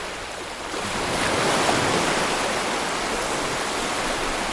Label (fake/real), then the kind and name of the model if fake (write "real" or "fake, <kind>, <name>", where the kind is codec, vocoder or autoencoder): real